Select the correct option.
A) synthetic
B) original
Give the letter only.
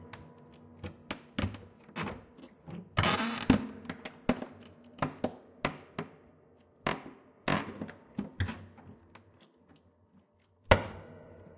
B